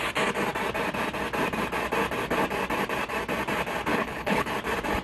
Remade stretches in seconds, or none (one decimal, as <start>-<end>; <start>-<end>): 3.9-4.5